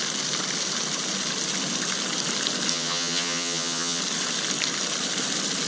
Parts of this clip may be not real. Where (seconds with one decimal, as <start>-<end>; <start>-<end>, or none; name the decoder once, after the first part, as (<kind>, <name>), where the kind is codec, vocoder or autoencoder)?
2.7-4.0 (vocoder, HiFi-GAN)